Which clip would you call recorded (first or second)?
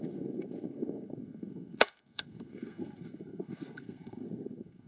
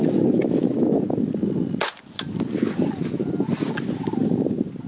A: second